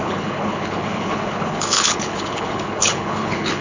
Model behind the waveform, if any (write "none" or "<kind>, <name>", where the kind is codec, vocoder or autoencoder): codec, HILCodec